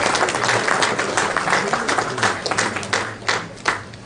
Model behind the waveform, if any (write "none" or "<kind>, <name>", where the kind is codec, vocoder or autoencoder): none